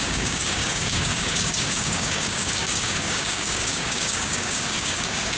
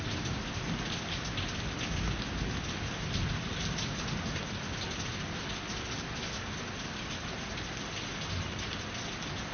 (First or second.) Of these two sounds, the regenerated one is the first